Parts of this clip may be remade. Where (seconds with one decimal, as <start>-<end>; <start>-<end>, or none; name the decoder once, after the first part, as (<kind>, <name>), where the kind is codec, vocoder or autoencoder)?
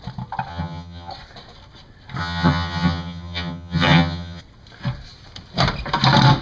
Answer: 0.5-1.1 (vocoder, HiFi-GAN); 2.2-4.4